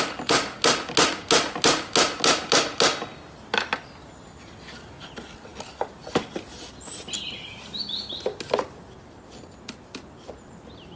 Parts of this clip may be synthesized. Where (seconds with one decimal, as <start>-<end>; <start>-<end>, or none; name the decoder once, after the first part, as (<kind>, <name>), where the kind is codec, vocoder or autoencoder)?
none